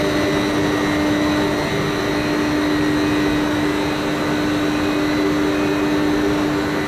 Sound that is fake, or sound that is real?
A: real